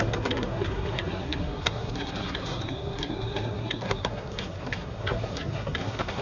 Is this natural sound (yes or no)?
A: no